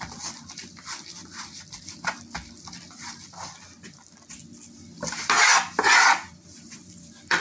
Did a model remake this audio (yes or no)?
yes